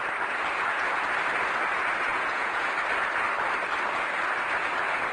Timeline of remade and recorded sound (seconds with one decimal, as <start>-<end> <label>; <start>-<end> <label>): 0.0-2.1 recorded; 2.1-2.7 remade; 2.7-5.1 recorded